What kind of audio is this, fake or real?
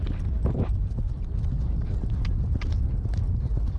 real